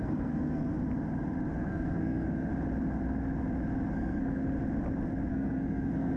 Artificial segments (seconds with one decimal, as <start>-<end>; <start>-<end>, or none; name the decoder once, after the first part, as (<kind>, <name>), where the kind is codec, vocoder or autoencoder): 0.0-0.7 (codec, SNAC); 1.5-2.5; 3.9-4.4; 5.3-6.2